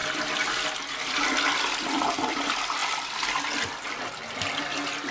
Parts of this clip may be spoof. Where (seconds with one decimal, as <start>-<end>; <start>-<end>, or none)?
none